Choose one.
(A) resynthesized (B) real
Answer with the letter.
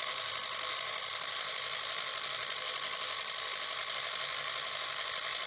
B